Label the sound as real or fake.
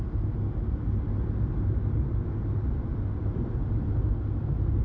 real